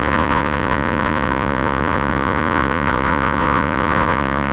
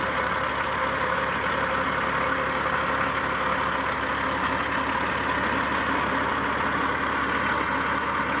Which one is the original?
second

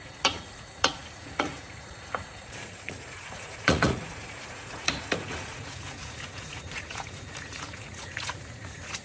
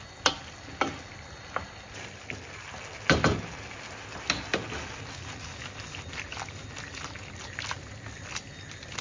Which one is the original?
second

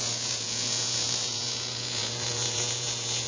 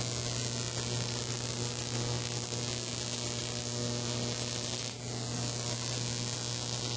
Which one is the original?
second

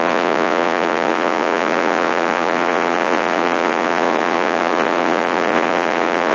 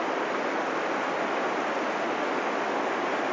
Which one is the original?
second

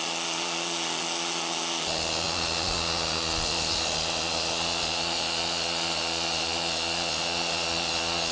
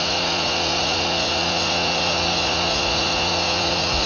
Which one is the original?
first